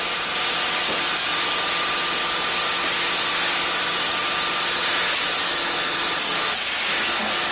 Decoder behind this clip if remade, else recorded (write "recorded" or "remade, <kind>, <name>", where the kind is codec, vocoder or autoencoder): recorded